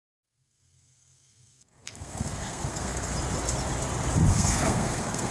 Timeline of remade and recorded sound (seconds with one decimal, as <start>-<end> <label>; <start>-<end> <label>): 0.0-3.1 remade; 3.1-4.3 recorded; 4.3-5.3 remade